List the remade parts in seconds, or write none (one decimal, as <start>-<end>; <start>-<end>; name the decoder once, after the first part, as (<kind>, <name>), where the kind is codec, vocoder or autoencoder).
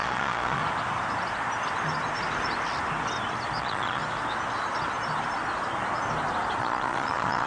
0.0-0.6 (vocoder, Vocos); 3.6-4.0; 6.6-7.5